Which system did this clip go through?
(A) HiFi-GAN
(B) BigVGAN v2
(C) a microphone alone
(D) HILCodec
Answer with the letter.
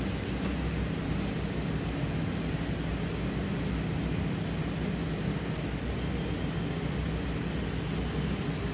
C